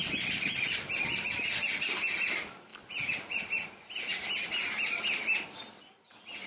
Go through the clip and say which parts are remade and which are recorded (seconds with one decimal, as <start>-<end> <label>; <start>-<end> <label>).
0.0-6.5 recorded